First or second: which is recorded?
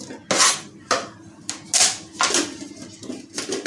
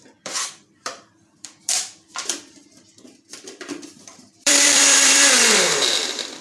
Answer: first